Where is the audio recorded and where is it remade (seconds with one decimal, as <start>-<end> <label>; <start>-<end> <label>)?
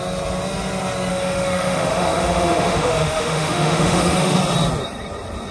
0.0-1.1 recorded; 1.1-4.4 remade; 4.4-5.5 recorded